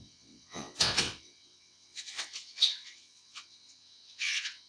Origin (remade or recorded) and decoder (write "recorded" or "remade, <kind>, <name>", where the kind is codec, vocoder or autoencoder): remade, vocoder, WaveNeXt